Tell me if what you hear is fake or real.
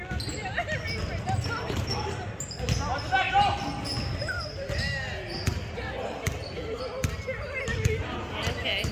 real